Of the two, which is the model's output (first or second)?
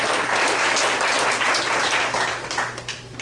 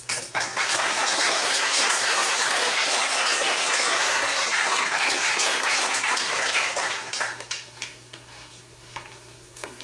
second